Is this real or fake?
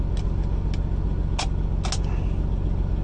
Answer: real